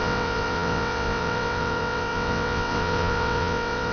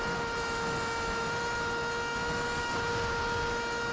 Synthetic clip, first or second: first